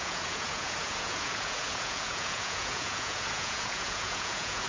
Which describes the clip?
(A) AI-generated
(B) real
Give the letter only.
A